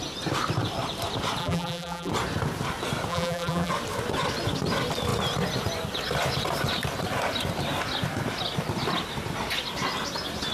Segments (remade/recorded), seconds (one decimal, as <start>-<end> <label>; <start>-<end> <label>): 0.0-1.4 recorded; 1.4-2.1 remade; 2.1-3.1 recorded; 3.1-3.7 remade; 3.7-10.5 recorded